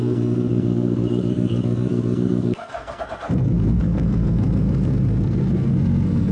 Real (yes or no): no